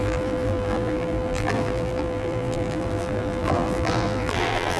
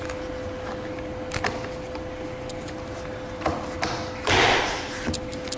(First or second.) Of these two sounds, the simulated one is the first